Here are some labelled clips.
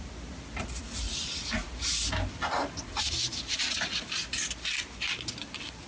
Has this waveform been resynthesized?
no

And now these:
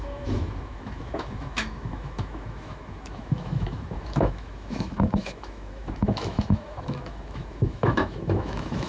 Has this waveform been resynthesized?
yes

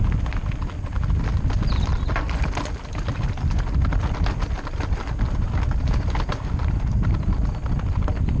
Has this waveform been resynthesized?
no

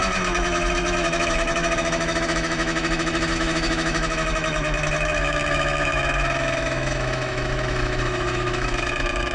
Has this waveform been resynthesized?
yes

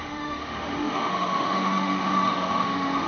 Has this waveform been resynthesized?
yes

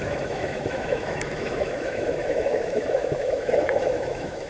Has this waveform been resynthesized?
yes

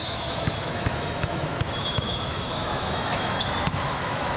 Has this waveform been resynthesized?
yes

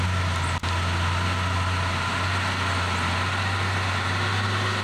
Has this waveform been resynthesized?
no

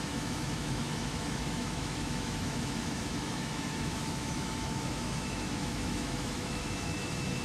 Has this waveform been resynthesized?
yes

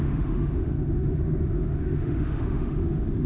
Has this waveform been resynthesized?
yes